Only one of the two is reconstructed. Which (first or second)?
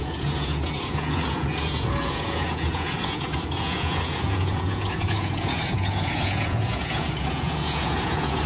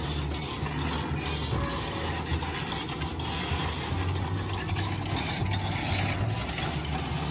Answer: first